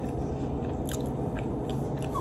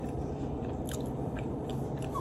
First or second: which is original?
first